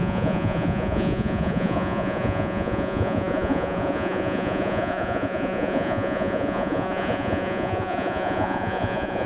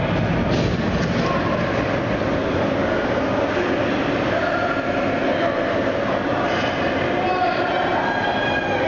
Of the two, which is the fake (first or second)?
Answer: first